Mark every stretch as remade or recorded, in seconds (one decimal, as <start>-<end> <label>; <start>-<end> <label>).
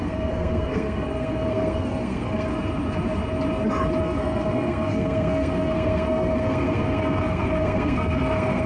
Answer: 0.0-2.5 remade; 2.5-4.0 recorded; 4.0-8.7 remade